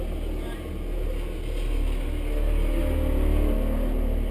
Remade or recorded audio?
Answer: recorded